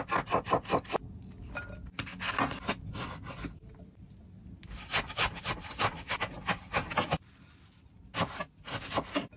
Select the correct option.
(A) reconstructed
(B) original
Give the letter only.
B